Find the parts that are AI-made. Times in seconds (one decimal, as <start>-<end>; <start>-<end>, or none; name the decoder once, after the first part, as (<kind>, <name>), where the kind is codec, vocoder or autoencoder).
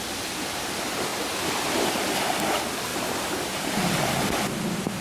2.9-4.5 (vocoder, BigVGAN v2)